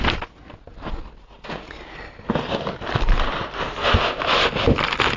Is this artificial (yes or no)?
no